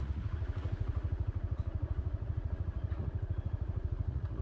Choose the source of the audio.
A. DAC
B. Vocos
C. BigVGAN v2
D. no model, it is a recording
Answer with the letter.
B